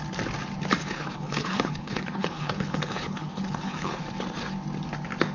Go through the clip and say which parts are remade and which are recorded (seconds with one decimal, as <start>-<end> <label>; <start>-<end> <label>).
0.0-0.8 recorded; 0.8-4.0 remade; 4.0-5.3 recorded